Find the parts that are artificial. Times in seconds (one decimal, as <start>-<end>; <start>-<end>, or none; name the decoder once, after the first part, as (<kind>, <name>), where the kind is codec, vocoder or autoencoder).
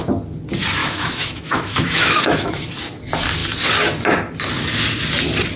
0.8-2.7 (autoencoder, DAC-VAE)